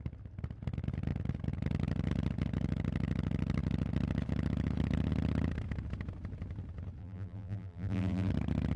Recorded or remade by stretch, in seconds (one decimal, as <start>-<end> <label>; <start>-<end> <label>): 0.0-7.0 recorded; 7.0-8.3 remade; 8.3-8.8 recorded

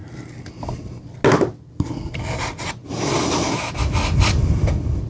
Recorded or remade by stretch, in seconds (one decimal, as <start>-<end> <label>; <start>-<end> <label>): 0.0-5.1 recorded